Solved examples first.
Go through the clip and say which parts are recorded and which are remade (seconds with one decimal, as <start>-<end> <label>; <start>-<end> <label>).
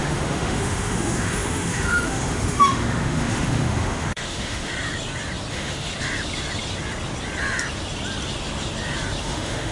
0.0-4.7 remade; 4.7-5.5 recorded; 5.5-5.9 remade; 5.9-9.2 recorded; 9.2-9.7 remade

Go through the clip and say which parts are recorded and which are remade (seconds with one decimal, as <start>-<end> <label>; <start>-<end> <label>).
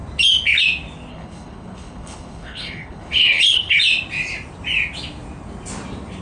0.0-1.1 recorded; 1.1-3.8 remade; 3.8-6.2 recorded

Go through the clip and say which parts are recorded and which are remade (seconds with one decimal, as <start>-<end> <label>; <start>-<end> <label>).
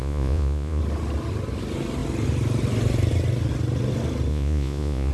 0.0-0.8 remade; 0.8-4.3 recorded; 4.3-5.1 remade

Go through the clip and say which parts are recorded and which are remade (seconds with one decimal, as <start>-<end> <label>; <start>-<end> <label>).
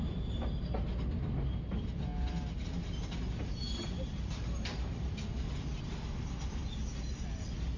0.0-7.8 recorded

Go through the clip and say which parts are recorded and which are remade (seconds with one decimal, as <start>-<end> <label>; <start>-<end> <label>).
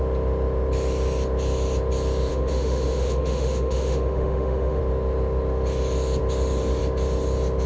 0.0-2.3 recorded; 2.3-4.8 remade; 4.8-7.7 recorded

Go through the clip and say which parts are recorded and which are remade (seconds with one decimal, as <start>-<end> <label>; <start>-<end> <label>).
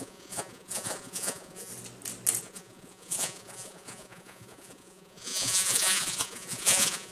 0.0-1.7 remade; 1.7-2.4 recorded; 2.4-7.1 remade